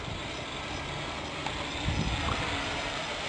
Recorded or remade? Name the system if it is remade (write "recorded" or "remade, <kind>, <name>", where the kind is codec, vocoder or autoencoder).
recorded